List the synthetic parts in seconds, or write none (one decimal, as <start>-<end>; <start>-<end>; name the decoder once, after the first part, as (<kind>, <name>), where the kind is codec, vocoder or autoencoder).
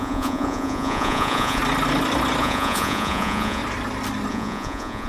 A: 0.0-1.6 (vocoder, Vocos); 2.4-3.6; 4.3-5.1